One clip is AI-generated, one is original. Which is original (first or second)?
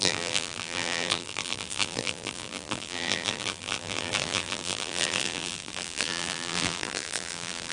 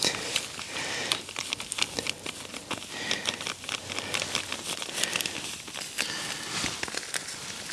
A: second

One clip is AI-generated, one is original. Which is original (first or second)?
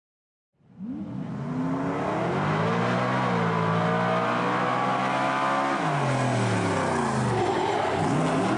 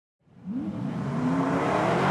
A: first